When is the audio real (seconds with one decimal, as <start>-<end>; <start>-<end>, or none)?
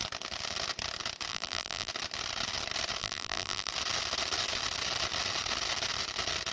0.0-1.3; 1.9-3.0; 3.7-6.5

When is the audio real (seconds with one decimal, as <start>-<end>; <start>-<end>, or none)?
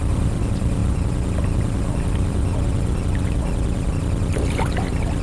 0.8-3.9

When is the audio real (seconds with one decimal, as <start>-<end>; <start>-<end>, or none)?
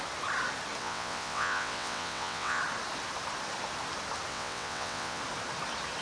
0.0-0.8; 2.6-4.3; 5.2-6.0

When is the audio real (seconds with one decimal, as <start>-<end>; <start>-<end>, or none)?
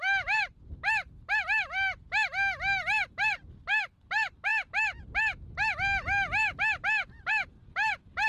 0.0-8.3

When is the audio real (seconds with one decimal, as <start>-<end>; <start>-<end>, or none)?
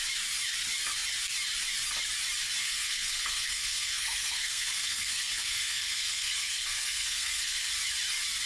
0.0-2.6; 7.7-8.5